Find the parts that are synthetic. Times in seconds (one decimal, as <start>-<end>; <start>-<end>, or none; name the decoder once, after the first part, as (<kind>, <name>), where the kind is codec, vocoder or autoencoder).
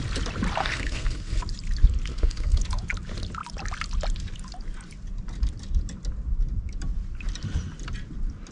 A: 0.6-1.4 (codec, SNAC); 2.1-2.6